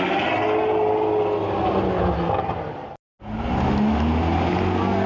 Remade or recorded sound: recorded